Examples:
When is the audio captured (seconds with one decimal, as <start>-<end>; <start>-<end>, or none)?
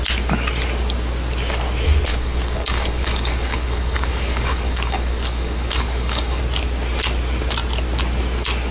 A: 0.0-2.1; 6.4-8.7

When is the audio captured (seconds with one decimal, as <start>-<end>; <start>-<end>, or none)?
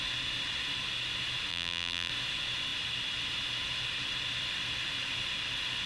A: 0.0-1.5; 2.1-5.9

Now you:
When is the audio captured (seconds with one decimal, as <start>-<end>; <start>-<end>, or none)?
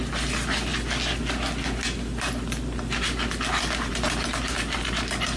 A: 0.0-5.4